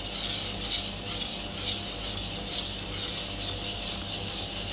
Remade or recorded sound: recorded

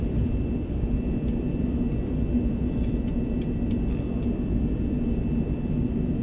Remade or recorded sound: recorded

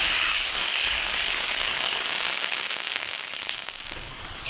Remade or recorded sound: remade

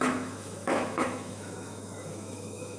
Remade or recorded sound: remade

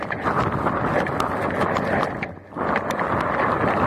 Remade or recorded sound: recorded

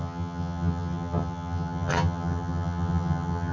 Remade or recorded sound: remade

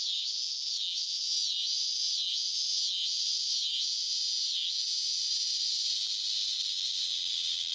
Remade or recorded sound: remade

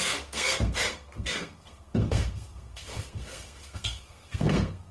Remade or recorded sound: remade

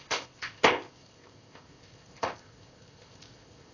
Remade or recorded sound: remade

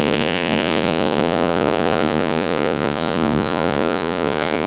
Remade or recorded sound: remade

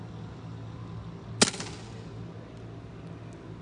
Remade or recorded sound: recorded